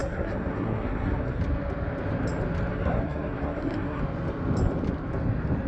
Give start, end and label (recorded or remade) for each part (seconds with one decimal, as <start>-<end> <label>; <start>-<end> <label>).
0.0-1.4 remade; 1.4-2.7 recorded; 2.7-4.0 remade; 4.0-5.7 recorded